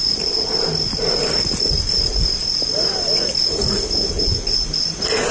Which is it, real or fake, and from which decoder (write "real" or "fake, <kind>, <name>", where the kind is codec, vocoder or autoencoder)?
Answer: real